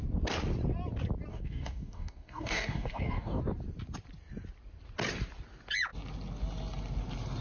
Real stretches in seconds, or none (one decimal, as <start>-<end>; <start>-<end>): 0.0-1.3; 3.4-7.4